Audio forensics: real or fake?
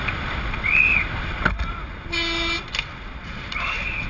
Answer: real